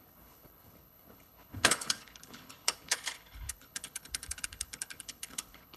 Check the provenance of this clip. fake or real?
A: fake